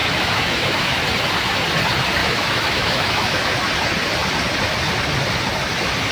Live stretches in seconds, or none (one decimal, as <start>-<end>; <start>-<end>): 1.0-2.2; 3.6-6.1